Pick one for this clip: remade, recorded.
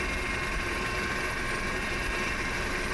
recorded